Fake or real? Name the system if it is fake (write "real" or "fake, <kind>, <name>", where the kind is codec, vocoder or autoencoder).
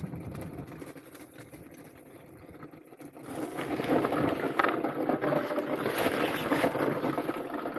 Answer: real